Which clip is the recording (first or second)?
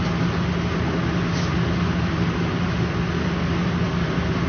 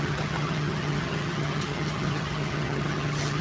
first